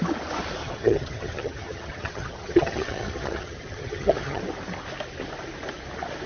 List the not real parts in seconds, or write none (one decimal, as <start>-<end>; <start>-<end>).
0.6-4.4